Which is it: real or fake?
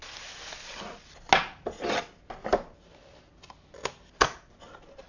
real